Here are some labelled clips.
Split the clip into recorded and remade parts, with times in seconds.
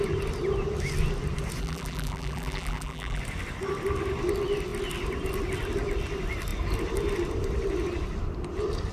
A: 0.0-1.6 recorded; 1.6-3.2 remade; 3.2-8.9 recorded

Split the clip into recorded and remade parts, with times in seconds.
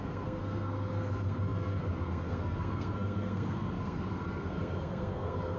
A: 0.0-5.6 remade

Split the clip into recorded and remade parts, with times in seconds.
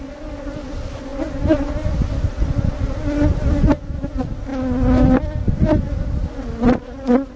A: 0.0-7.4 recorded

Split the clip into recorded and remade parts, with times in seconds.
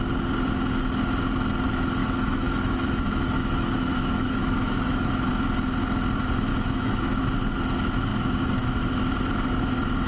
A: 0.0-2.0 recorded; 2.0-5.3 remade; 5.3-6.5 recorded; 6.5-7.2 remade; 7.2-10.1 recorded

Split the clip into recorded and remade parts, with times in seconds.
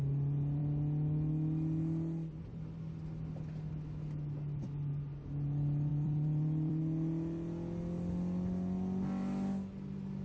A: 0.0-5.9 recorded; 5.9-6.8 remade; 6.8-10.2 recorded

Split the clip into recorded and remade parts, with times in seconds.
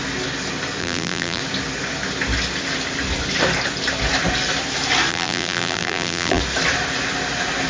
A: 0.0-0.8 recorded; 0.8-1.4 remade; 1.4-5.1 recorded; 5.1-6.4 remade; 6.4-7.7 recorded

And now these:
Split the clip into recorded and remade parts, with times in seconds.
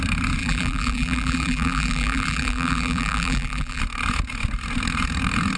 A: 0.0-0.4 recorded; 0.4-3.8 remade; 3.8-5.6 recorded